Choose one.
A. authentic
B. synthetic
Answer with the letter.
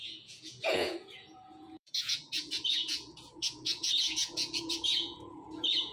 B